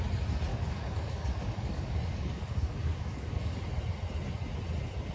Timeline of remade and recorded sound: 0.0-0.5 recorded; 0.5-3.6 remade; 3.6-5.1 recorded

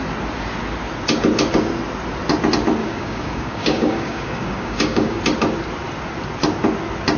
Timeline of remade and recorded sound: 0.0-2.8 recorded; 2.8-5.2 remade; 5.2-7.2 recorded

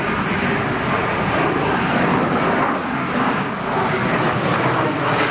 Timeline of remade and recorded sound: 0.0-2.8 recorded; 2.8-3.7 remade; 3.7-5.3 recorded

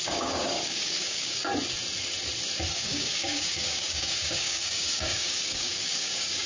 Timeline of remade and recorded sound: 0.0-1.5 remade; 1.5-2.7 recorded; 2.7-6.5 remade

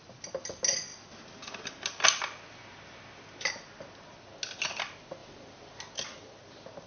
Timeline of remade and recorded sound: 0.0-6.9 recorded

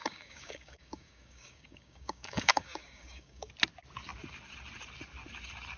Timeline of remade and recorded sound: 0.0-3.5 remade; 3.5-5.8 recorded